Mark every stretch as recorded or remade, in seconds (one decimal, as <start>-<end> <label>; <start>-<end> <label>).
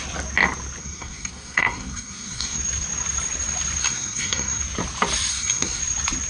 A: 0.0-0.8 recorded; 0.8-2.6 remade; 2.6-3.8 recorded; 3.8-4.6 remade; 4.6-5.3 recorded; 5.3-5.8 remade; 5.8-6.3 recorded